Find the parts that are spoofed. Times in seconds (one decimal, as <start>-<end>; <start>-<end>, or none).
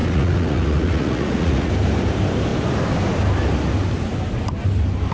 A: 0.0-1.7